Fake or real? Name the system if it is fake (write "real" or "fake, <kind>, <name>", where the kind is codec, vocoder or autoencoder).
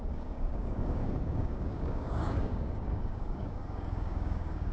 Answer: fake, codec, DAC